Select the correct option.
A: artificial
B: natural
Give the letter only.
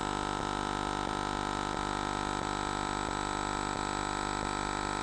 B